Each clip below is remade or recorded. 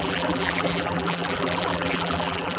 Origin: remade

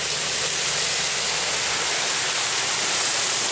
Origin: recorded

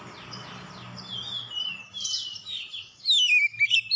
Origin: recorded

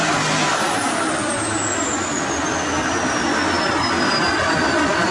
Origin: recorded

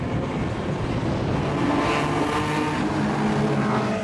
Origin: recorded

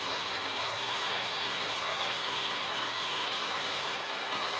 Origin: remade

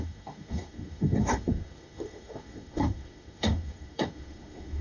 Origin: remade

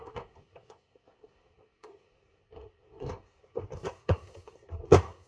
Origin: remade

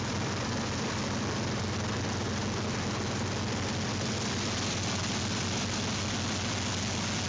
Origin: recorded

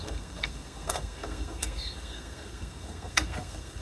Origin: remade